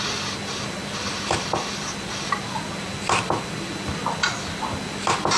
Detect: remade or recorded recorded